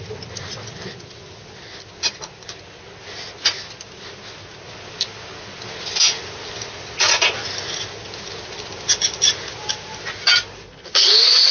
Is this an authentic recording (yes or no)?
yes